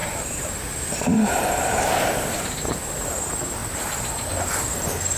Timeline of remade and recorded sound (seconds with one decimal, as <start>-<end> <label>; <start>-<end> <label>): 0.0-3.1 remade; 3.1-3.6 recorded; 3.6-4.3 remade; 4.3-5.2 recorded

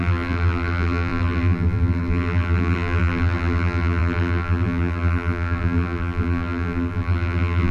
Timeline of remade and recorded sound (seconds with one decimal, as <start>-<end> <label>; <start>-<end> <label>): 0.0-7.7 remade

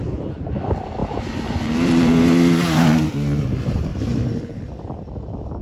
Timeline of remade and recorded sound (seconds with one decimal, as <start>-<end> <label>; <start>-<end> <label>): 0.0-1.0 recorded; 1.0-2.1 remade; 2.1-3.9 recorded; 3.9-4.7 remade; 4.7-5.6 recorded

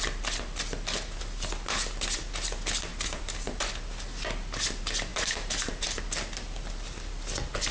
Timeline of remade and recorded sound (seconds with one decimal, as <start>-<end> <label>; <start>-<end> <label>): 0.0-2.9 recorded; 2.9-3.7 remade; 3.7-5.1 recorded; 5.1-6.0 remade; 6.0-7.7 recorded